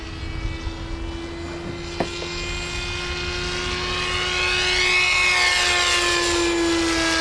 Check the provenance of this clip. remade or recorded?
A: recorded